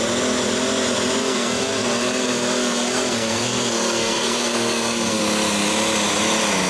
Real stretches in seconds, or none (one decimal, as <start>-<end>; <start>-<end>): 0.0-1.2; 5.2-6.7